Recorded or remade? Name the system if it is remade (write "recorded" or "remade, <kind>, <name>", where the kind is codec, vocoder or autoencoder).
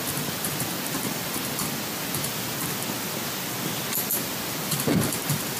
recorded